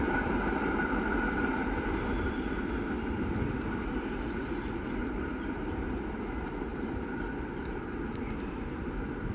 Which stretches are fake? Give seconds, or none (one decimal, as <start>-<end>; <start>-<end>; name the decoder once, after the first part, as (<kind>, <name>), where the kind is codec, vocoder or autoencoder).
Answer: none